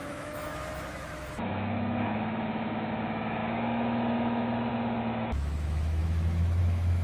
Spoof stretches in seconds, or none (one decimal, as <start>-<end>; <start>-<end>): 0.0-7.0